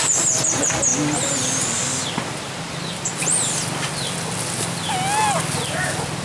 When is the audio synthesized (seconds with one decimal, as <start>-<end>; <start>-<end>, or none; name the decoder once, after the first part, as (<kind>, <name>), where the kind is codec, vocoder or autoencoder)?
0.9-3.1 (vocoder, BigVGAN v2)